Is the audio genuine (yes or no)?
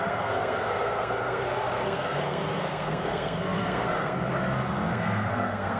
no